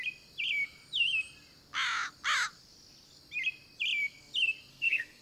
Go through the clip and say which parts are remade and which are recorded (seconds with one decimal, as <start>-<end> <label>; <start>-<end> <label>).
0.0-4.7 recorded; 4.7-5.2 remade